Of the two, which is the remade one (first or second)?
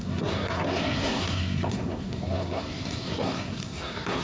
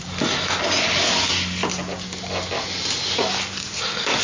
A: first